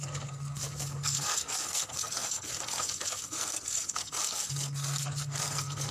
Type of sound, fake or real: fake